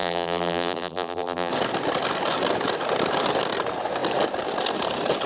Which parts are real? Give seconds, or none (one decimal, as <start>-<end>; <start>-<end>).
1.5-5.3